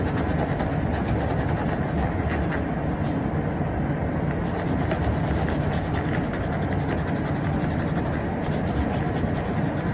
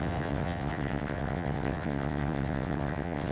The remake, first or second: second